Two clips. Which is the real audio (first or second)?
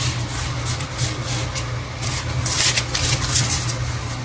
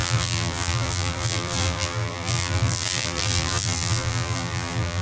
first